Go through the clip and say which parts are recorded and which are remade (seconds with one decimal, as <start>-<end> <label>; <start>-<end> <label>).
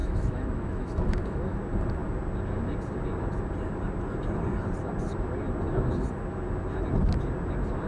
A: 0.0-1.6 remade; 1.6-7.9 recorded